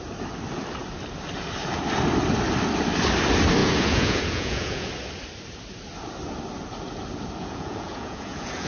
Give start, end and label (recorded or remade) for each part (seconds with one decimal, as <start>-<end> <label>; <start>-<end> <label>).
0.0-3.6 recorded; 3.6-4.9 remade; 4.9-7.4 recorded; 7.4-8.7 remade